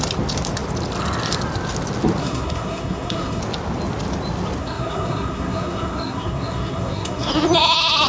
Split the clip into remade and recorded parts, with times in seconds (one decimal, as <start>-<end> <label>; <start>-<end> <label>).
0.0-2.2 recorded; 2.2-3.4 remade; 3.4-4.6 recorded; 4.6-7.3 remade; 7.3-8.1 recorded